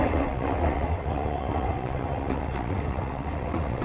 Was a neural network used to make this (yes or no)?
yes